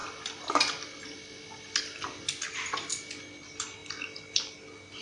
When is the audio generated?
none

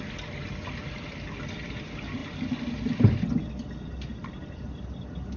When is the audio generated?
none

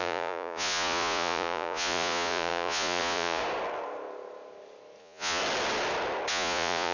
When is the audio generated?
0.0-3.4; 5.0-5.4; 6.3-6.9

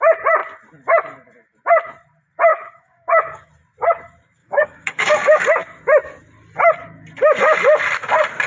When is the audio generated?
2.5-3.5; 4.4-5.1

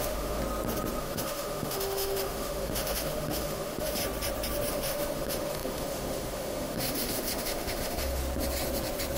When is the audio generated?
0.0-0.4; 1.0-4.0; 4.7-8.2

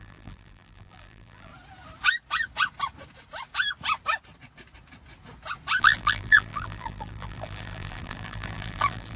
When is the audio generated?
0.0-1.5; 5.8-9.2

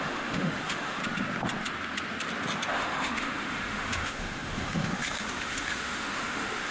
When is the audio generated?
0.0-1.0; 2.7-6.7